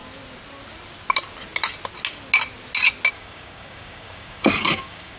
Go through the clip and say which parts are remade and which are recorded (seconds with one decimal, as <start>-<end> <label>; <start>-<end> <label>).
0.0-3.1 recorded; 3.1-5.2 remade